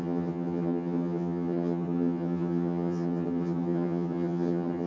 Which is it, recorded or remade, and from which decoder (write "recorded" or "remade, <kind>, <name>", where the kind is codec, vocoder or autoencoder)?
remade, vocoder, HiFi-GAN